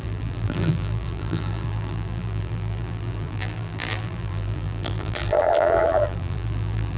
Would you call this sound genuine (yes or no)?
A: no